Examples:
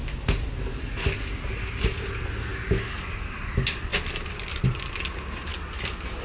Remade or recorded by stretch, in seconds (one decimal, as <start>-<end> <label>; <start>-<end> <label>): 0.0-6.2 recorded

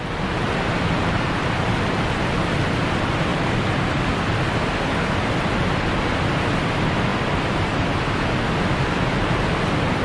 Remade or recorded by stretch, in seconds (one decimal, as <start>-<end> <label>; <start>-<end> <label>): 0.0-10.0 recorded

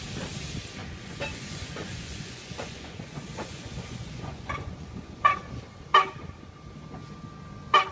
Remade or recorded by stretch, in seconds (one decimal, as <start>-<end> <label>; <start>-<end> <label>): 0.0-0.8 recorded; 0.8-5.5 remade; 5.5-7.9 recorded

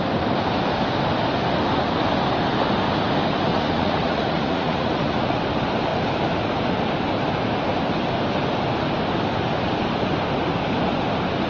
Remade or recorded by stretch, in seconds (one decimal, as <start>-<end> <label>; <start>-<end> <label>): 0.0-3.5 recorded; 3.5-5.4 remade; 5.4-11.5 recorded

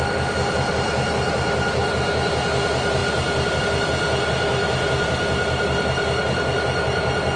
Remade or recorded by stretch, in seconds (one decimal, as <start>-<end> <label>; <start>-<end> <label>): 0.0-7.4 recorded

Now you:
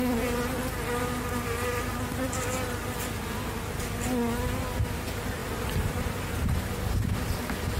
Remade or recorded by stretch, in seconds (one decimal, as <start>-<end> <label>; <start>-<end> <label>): 0.0-7.8 recorded

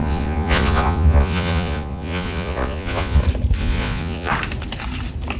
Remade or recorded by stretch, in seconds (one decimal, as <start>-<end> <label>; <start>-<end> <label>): 0.0-3.2 remade; 3.2-3.6 recorded; 3.6-4.3 remade; 4.3-5.4 recorded

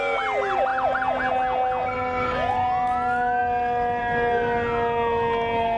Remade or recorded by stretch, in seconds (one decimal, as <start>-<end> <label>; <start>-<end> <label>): 0.0-5.8 recorded